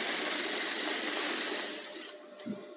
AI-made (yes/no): no